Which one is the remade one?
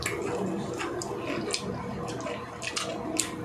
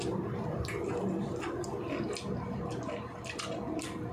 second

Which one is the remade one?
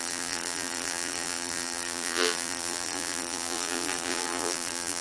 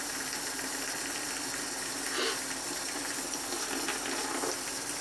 first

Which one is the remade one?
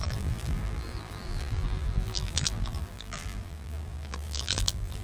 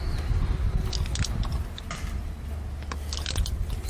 first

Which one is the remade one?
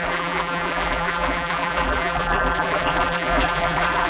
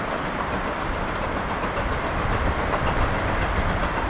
first